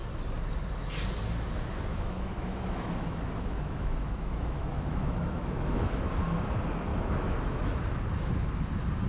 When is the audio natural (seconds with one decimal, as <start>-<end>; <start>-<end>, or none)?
0.0-1.9; 6.1-6.9; 7.7-9.1